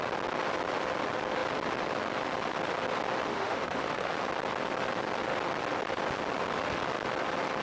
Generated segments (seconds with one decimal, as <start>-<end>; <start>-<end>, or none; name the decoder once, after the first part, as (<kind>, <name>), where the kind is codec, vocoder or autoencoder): 3.3-4.1 (autoencoder, DAC-VAE)